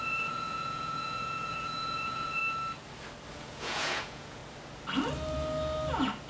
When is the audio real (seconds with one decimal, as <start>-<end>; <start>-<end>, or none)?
2.4-3.3; 4.4-6.3